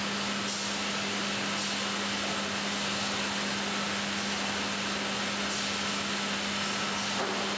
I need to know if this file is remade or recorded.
recorded